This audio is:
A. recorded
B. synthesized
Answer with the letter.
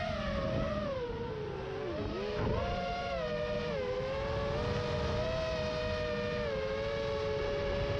A